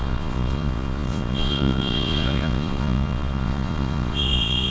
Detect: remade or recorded remade